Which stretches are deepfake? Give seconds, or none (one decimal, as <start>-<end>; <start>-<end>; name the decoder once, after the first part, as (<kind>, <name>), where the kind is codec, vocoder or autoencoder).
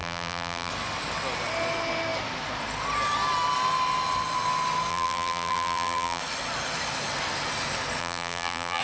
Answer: 0.0-0.7 (vocoder, BigVGAN v2); 4.9-6.2; 8.0-8.8